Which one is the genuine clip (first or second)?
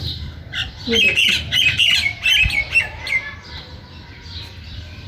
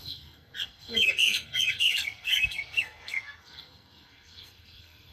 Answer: first